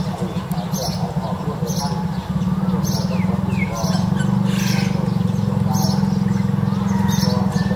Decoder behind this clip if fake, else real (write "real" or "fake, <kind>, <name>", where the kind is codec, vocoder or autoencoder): real